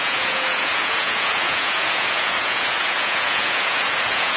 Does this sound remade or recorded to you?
remade